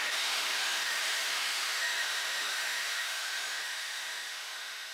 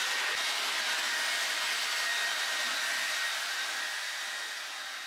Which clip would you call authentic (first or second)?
second